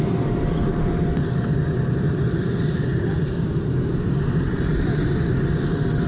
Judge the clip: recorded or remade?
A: recorded